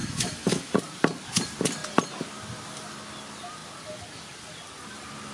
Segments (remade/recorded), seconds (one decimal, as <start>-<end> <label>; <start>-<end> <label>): 0.0-0.7 remade; 0.7-5.3 recorded